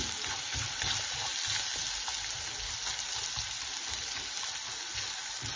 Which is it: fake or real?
real